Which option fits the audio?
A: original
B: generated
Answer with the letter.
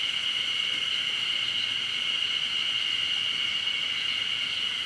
A